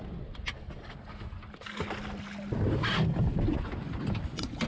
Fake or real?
real